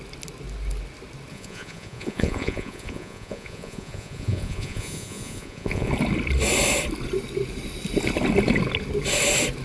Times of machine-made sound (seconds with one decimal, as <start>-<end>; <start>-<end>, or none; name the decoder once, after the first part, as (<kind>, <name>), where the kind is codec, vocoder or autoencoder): 1.3-5.9 (vocoder, Vocos)